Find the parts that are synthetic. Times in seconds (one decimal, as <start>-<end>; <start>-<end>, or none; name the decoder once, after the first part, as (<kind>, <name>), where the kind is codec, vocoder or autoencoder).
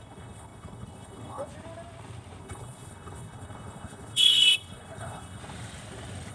0.0-1.5 (codec, HILCodec); 2.4-5.4